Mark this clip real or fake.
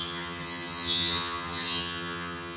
fake